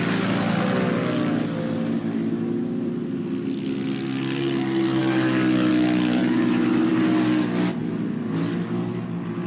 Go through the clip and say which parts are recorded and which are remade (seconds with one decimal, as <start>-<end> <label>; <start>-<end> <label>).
0.0-9.5 recorded